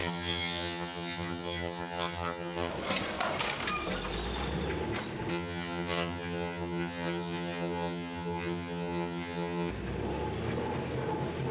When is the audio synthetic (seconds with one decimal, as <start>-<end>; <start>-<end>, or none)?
0.0-2.7; 5.3-9.7